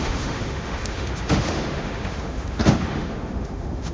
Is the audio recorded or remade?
remade